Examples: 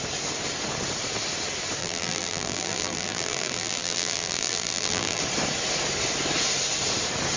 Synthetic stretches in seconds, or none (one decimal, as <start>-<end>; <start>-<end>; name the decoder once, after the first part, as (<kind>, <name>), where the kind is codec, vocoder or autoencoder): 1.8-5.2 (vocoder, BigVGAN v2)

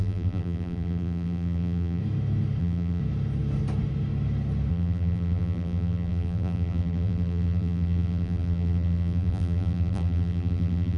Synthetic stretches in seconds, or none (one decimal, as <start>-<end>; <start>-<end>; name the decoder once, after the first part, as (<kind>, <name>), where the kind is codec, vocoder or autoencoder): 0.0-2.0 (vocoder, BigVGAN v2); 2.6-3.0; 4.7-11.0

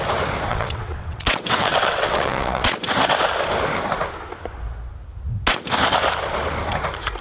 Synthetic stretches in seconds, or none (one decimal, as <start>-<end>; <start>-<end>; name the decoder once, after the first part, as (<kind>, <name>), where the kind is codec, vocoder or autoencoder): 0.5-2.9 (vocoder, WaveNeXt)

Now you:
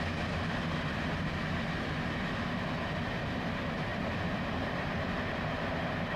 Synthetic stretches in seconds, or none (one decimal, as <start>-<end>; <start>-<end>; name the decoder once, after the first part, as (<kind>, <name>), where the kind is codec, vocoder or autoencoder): 3.9-5.0 (vocoder, BigVGAN v2)